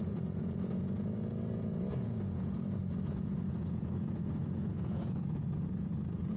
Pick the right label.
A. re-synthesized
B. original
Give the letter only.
A